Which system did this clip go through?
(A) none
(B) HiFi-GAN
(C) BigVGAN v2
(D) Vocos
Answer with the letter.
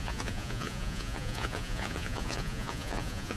D